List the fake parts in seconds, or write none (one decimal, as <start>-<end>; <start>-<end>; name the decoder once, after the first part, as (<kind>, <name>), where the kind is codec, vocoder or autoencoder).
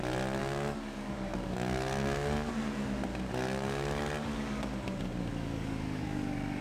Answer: 0.4-2.5 (codec, DAC); 3.1-6.6